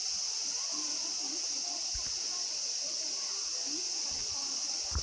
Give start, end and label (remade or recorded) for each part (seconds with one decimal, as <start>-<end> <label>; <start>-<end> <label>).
0.0-5.0 recorded